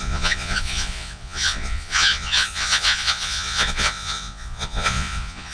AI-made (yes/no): yes